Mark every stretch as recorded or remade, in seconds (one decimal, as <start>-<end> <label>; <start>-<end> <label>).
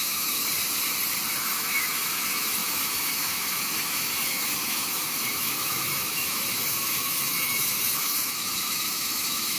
0.0-0.6 remade; 0.6-1.4 recorded; 1.4-9.6 remade